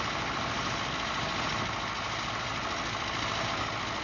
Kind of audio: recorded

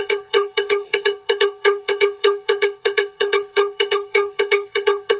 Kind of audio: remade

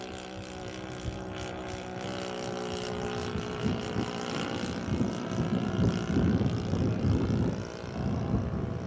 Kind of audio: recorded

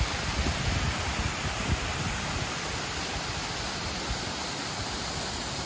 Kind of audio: recorded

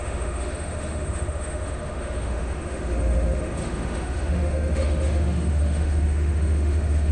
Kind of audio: remade